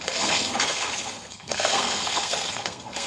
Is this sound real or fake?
fake